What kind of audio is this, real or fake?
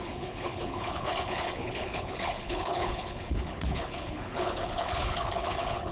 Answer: fake